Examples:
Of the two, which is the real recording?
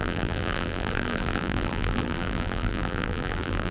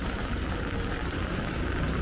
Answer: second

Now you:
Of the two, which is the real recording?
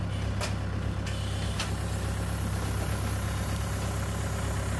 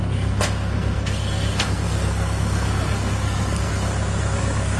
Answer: first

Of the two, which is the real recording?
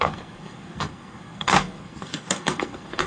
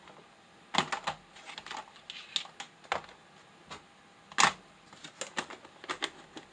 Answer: second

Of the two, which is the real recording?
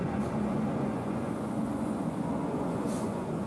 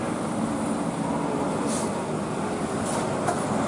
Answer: second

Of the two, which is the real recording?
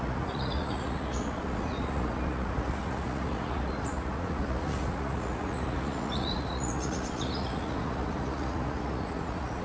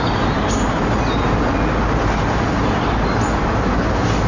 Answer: second